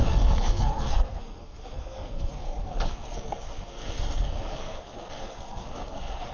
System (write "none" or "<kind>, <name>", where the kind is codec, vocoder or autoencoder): codec, SNAC